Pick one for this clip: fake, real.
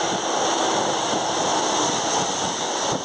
real